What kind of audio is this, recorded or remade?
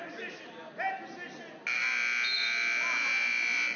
recorded